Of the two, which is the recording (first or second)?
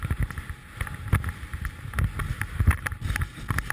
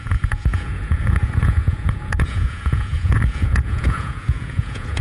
first